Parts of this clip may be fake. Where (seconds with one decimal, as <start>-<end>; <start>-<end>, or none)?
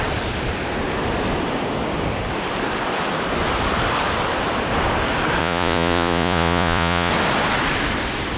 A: 5.4-7.1